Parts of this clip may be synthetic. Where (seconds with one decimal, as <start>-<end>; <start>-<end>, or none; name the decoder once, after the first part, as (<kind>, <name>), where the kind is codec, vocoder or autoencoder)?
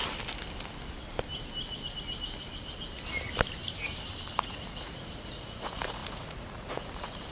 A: 4.4-7.3 (vocoder, Vocos)